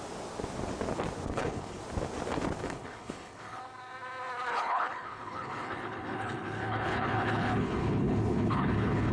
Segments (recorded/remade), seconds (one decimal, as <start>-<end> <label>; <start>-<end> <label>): 0.0-1.3 recorded; 1.3-1.8 remade; 1.8-2.6 recorded; 2.6-3.6 remade; 3.6-4.5 recorded; 4.5-9.1 remade